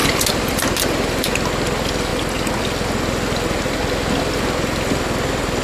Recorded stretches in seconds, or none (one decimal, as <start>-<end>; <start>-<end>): 0.0-5.6